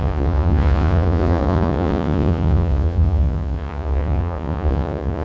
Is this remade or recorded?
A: remade